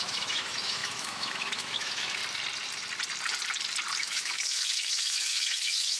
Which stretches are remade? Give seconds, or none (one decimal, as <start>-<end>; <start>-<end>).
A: 0.0-2.2; 4.0-6.0